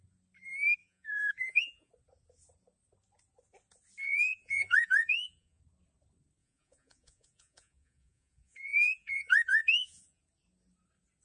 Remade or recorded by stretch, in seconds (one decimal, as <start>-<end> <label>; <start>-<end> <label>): 0.0-0.8 recorded; 0.8-1.9 remade; 1.9-4.0 recorded; 4.0-5.6 remade; 5.6-6.4 recorded; 6.4-10.2 remade; 10.2-11.2 recorded